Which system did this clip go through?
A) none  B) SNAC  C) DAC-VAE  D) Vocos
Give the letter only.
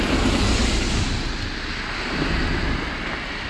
A